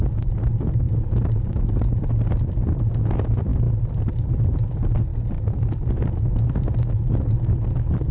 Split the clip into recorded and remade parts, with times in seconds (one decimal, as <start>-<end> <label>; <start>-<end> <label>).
0.0-8.1 remade